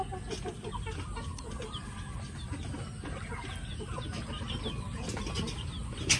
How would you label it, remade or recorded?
recorded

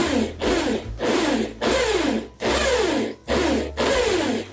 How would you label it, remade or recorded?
recorded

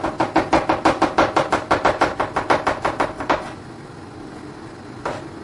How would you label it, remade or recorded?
recorded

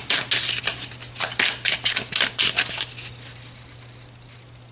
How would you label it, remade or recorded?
recorded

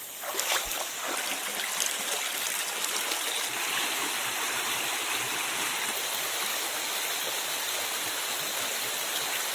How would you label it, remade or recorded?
recorded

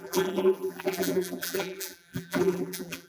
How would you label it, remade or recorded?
remade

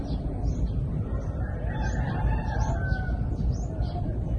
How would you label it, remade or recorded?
recorded